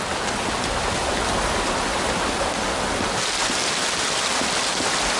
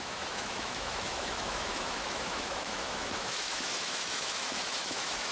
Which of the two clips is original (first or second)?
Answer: first